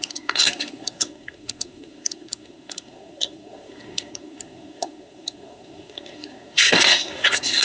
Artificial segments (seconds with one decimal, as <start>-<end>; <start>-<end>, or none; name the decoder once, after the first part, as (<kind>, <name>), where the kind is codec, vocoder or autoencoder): 0.0-7.6 (codec, SNAC)